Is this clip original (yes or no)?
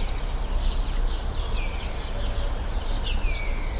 yes